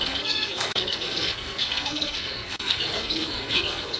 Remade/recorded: remade